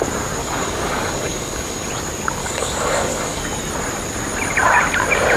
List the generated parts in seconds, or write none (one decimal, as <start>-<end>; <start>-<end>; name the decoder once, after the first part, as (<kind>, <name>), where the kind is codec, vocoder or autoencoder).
0.4-1.9 (codec, DAC); 2.4-3.4